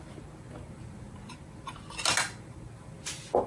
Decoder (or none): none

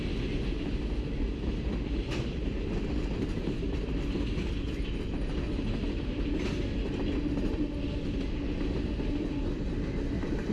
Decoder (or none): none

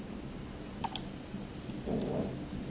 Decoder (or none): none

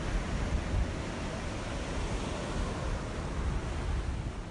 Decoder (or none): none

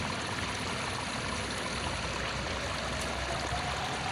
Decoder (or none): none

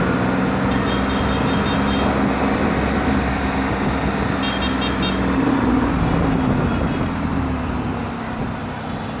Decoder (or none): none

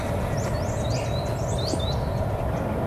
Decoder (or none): none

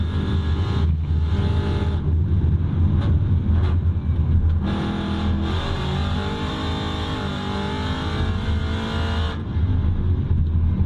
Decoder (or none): none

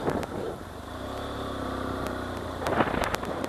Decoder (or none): vocoder, BigVGAN v2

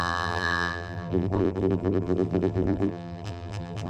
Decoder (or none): vocoder, BigVGAN v2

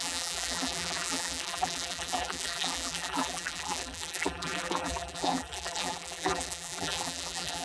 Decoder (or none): vocoder, BigVGAN v2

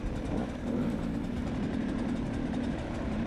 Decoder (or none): vocoder, BigVGAN v2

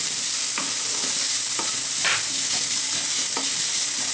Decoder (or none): vocoder, BigVGAN v2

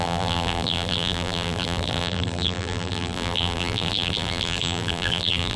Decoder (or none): vocoder, BigVGAN v2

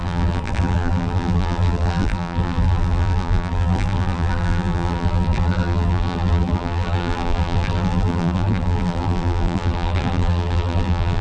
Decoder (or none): vocoder, BigVGAN v2